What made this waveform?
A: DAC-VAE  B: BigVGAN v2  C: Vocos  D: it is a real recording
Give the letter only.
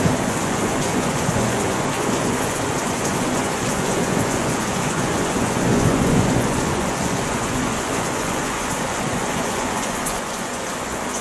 C